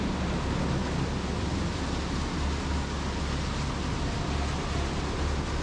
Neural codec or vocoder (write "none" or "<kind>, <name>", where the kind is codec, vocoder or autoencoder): none